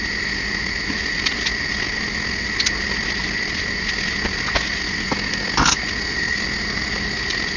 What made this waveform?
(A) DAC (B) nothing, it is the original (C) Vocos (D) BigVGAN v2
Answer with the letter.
B